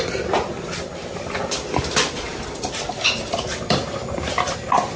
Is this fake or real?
real